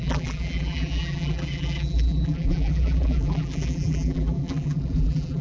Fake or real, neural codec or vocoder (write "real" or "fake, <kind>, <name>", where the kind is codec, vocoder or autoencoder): fake, vocoder, BigVGAN v2